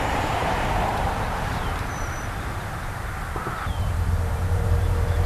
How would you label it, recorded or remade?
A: remade